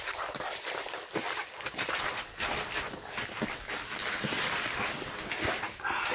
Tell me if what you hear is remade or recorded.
recorded